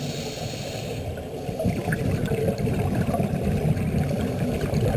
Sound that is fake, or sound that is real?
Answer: real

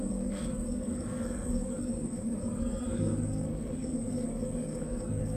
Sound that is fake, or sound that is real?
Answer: fake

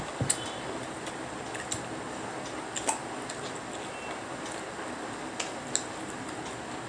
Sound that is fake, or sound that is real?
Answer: real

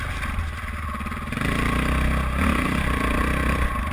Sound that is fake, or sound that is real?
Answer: real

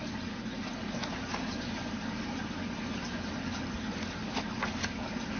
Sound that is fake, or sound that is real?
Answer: real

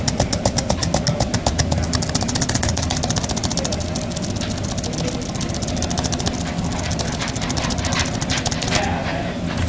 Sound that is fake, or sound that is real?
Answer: real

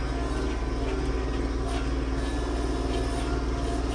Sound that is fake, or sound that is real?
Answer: real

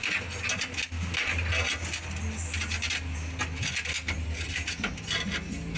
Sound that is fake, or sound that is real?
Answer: real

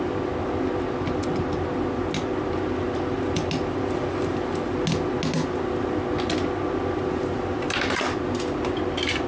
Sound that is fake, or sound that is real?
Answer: real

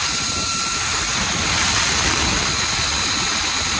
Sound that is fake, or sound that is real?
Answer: real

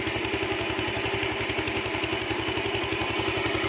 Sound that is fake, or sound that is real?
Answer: real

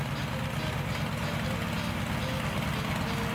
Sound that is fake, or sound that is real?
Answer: real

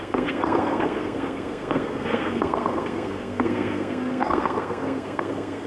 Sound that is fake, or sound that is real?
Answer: fake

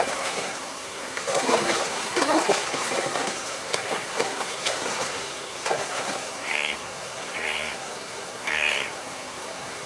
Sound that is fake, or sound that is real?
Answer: fake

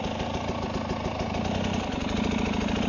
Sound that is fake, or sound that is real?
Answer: real